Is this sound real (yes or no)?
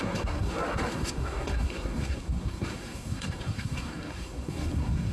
no